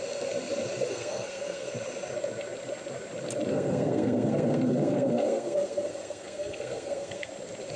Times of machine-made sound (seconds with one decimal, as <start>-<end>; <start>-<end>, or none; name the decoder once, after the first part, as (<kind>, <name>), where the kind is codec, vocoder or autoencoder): 0.9-1.7 (codec, SNAC); 3.5-7.3